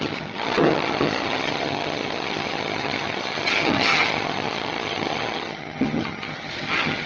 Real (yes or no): no